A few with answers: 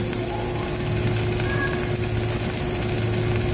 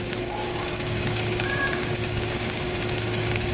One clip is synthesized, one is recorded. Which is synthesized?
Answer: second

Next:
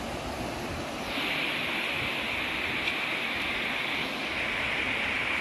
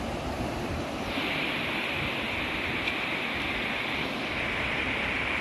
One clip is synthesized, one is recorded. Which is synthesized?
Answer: second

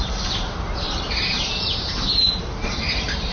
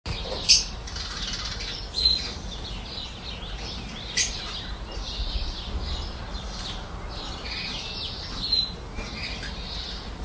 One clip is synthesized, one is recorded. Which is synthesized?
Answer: first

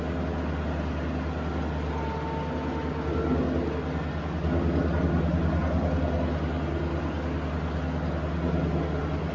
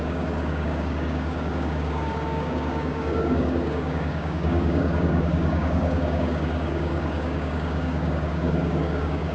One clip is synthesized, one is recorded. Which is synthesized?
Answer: second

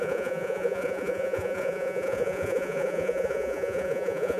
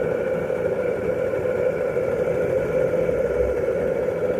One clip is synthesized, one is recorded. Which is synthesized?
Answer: first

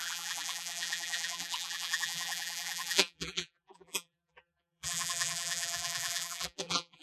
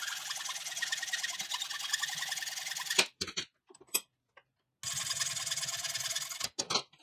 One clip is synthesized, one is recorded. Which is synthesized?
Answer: first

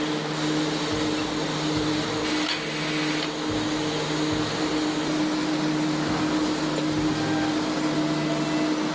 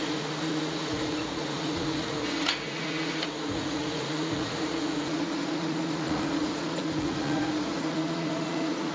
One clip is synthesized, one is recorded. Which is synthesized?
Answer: second